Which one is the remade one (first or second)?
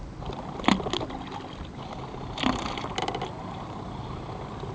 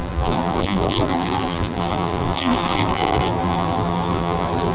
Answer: second